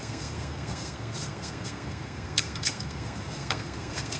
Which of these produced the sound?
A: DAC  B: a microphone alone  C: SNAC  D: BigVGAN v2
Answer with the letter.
C